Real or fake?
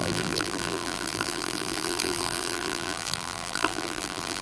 fake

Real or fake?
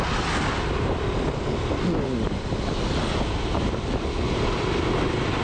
real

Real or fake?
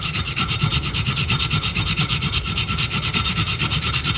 fake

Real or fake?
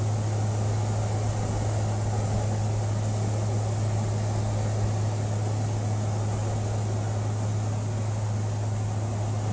real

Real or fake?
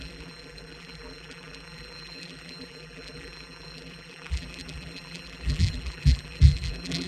fake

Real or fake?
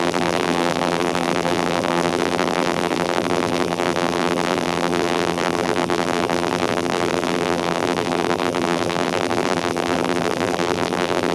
fake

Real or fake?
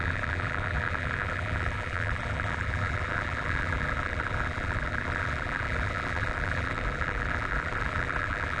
fake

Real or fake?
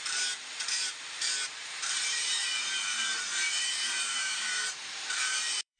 fake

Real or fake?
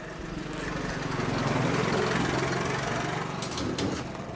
real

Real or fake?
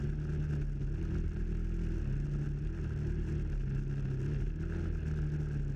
real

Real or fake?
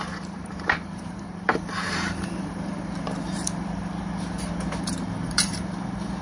fake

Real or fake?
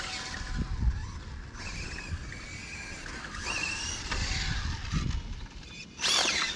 real